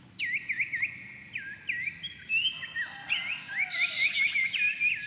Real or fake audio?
real